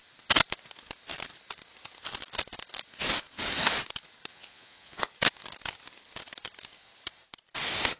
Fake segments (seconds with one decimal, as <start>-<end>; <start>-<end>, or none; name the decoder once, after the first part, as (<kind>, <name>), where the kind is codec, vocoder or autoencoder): 4.3-5.0 (vocoder, Vocos)